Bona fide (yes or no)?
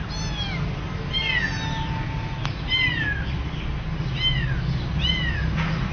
yes